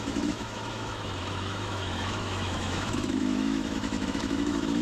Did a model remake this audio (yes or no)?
yes